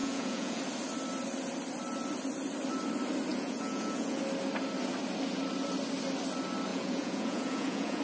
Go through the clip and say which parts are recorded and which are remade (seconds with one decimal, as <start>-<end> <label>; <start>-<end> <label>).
0.0-0.6 remade; 0.6-3.3 recorded; 3.3-4.2 remade; 4.2-6.7 recorded; 6.7-8.0 remade